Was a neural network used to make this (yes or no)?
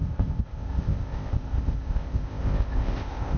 yes